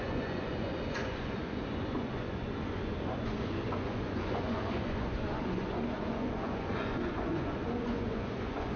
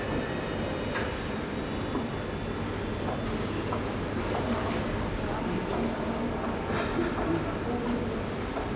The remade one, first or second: first